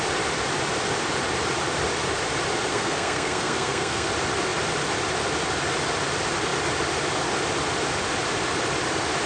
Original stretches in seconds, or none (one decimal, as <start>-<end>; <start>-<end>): 0.0-2.7; 4.1-9.3